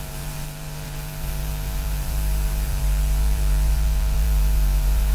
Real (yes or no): no